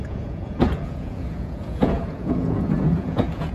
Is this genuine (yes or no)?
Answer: no